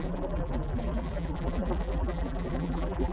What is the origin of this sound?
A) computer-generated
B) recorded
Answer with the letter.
A